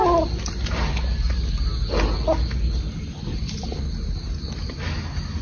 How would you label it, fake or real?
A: real